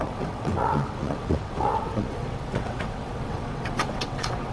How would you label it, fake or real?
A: fake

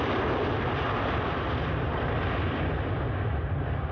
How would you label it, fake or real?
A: real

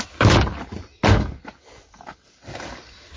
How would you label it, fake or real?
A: real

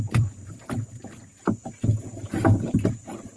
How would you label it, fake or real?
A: fake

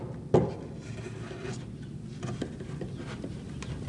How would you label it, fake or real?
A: real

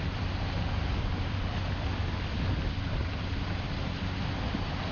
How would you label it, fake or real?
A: real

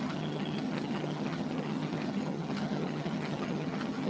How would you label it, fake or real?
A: fake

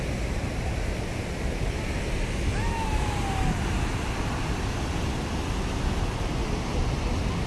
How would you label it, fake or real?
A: real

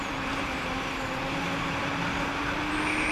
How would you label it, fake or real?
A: real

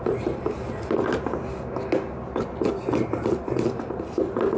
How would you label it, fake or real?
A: real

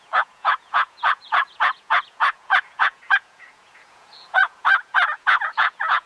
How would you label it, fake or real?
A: fake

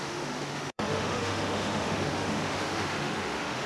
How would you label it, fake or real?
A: fake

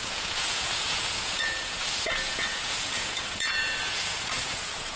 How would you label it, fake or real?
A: fake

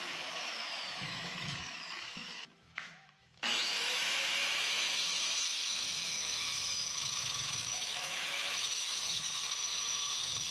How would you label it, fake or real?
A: fake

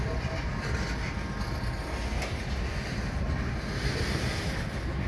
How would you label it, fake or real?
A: real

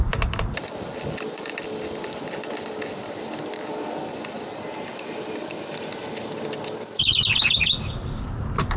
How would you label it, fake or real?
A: real